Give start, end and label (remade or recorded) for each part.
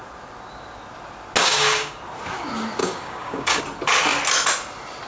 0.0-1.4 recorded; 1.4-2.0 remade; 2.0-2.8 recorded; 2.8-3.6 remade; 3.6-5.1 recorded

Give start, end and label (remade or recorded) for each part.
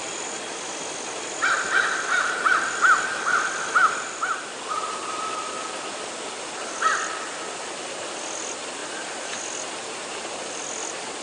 0.0-8.8 recorded; 8.8-9.4 remade; 9.4-11.2 recorded